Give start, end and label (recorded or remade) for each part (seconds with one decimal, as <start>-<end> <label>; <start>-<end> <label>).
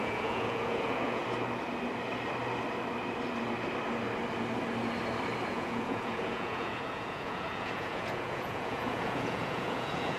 0.0-1.2 remade; 1.2-5.5 recorded; 5.5-10.2 remade